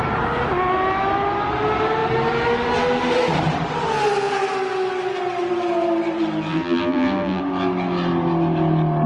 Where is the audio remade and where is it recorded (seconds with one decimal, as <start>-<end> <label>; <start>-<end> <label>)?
0.0-6.5 recorded; 6.5-7.4 remade; 7.4-9.1 recorded